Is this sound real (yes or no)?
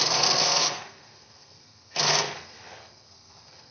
no